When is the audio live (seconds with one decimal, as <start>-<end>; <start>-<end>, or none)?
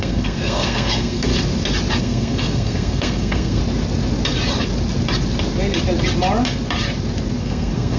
1.3-2.0; 3.6-7.4